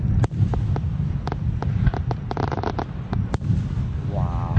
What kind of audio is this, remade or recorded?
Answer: recorded